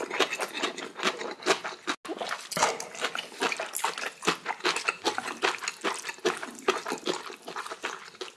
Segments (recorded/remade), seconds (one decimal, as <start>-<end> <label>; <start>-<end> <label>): 0.0-8.4 recorded